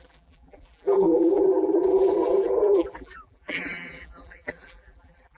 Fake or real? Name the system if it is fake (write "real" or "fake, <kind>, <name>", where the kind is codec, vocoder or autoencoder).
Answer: fake, vocoder, BigVGAN v2